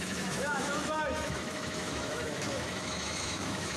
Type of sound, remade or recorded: remade